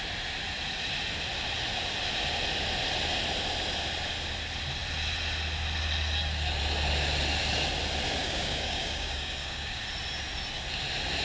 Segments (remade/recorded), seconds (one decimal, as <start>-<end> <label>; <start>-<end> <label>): 0.0-8.2 recorded; 8.2-9.8 remade; 9.8-11.2 recorded